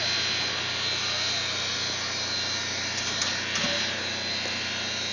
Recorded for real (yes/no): yes